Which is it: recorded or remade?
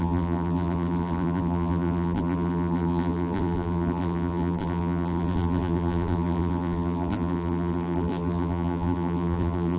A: remade